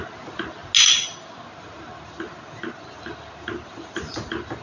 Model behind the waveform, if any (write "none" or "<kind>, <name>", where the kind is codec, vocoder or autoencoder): none